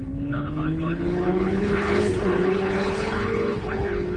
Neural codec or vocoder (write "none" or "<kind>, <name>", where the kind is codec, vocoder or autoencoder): codec, HILCodec